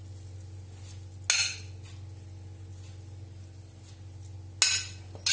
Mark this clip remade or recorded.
recorded